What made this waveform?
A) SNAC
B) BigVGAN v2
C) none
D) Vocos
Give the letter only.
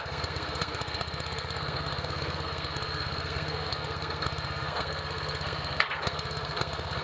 A